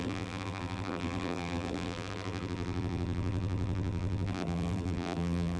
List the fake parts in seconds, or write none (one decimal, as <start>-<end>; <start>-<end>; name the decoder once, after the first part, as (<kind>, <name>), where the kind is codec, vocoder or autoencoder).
0.0-5.6 (vocoder, BigVGAN v2)